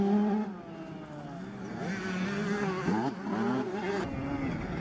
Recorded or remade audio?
recorded